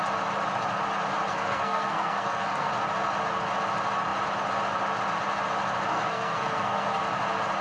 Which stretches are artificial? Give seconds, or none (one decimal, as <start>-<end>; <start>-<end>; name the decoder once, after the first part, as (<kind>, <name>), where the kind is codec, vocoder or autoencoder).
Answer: 1.3-2.7 (codec, SNAC); 5.9-7.0